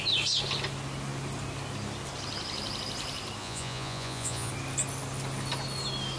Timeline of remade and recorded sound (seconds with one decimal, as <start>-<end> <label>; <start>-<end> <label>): 0.0-3.4 recorded; 3.4-4.5 remade; 4.5-6.2 recorded